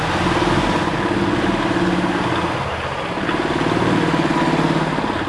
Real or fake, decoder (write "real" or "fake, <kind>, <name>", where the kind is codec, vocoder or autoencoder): real